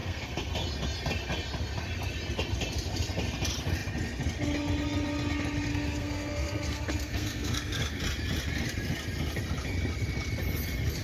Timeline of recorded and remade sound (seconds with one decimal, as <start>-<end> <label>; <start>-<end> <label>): 0.0-0.5 remade; 0.5-5.7 recorded; 5.7-8.0 remade; 8.0-11.0 recorded